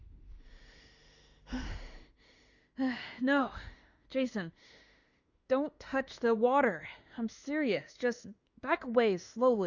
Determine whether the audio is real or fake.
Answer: fake